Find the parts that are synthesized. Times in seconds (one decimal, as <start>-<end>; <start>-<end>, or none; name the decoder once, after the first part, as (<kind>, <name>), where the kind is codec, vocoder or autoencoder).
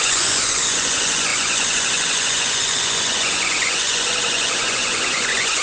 0.0-5.6 (vocoder, Vocos)